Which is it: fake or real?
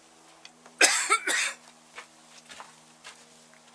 real